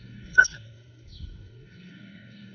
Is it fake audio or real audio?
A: fake